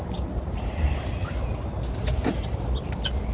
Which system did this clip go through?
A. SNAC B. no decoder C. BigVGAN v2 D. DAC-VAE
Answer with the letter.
B